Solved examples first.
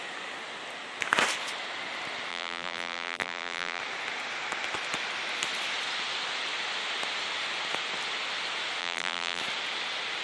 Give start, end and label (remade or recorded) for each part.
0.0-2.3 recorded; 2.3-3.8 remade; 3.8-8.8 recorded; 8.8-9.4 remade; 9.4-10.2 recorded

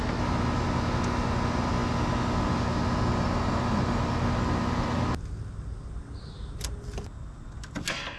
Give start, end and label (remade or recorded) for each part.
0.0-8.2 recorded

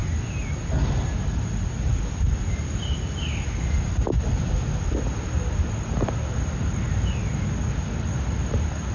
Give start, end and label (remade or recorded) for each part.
0.0-8.9 recorded